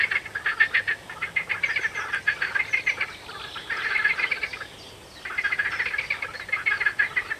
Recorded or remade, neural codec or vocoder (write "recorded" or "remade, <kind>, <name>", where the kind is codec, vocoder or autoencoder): recorded